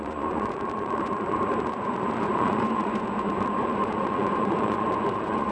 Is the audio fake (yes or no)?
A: yes